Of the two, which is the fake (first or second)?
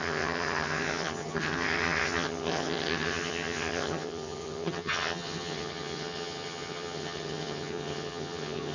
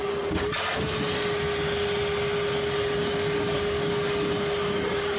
first